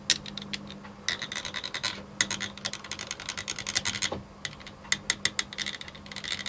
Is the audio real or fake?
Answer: real